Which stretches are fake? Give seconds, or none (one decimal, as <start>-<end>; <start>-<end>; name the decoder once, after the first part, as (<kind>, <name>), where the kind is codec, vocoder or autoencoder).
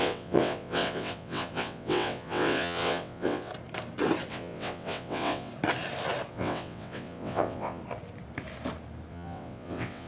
0.0-3.5 (vocoder, WaveNeXt); 4.3-5.5; 6.3-7.8; 9.1-10.1